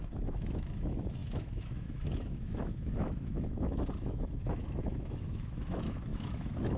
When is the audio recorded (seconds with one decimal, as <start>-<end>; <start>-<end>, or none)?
none